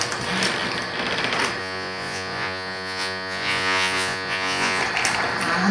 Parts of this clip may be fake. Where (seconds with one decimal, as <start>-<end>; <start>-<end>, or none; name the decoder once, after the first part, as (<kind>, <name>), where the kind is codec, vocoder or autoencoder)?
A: 1.6-4.8 (vocoder, Vocos)